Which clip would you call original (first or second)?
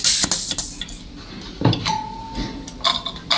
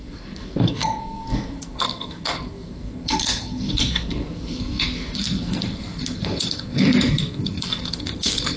first